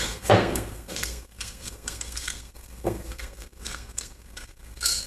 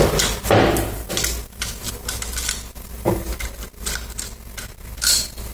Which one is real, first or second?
second